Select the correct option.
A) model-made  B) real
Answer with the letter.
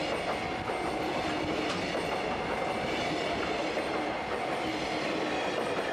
B